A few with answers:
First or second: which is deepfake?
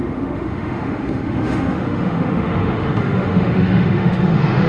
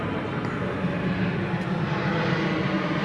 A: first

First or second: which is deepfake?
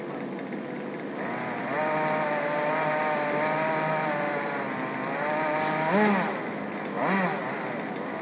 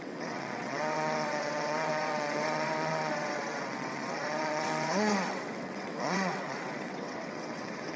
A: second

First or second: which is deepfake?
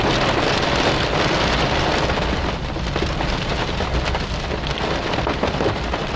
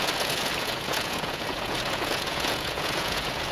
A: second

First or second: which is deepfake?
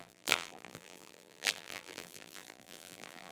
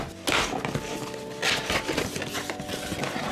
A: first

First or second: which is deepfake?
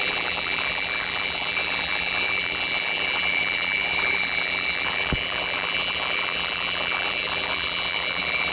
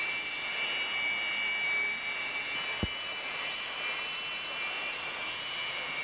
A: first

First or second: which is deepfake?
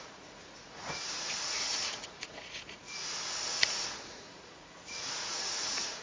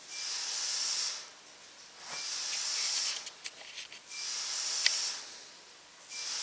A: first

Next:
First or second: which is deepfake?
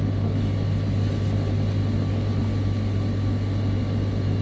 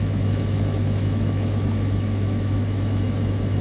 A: second